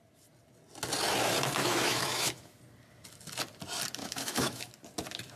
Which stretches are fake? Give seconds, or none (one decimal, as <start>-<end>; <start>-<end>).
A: 1.6-2.6; 4.0-4.7